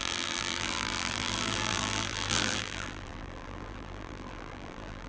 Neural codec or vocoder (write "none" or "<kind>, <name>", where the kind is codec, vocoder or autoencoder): vocoder, BigVGAN v2